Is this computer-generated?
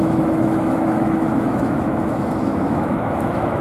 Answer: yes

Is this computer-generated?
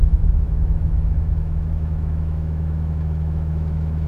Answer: yes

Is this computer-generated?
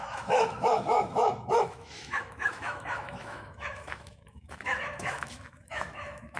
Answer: yes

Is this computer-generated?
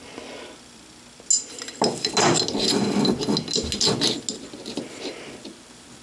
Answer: no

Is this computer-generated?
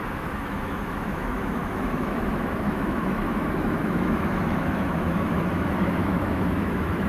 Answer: yes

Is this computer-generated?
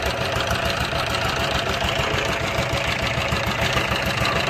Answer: no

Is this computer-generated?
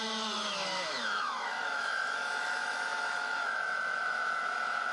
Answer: yes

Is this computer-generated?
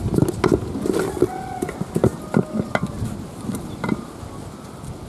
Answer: no